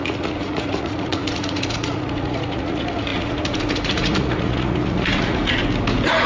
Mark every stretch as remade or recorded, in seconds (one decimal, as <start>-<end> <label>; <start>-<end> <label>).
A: 0.0-5.6 remade; 5.6-6.3 recorded